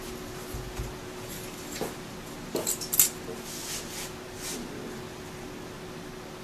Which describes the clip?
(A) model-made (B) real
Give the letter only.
B